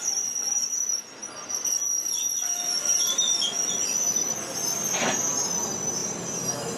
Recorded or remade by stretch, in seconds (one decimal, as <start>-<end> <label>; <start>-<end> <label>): 0.0-6.8 recorded